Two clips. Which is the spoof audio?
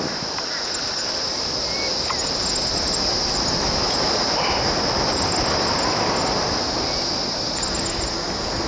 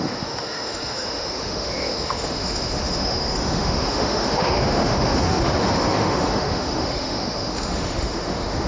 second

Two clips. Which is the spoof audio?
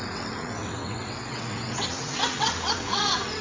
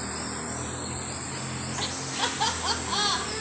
first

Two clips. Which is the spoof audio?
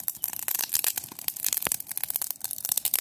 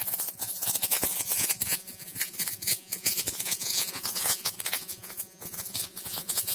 second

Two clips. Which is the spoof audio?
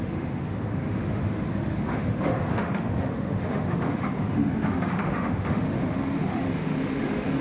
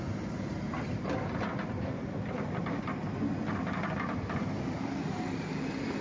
first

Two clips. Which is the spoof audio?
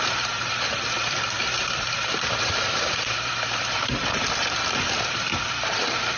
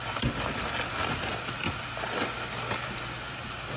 first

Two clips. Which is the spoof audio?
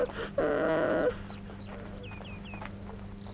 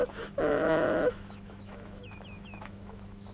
second